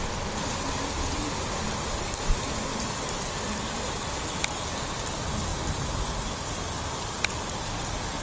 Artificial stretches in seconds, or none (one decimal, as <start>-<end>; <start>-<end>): none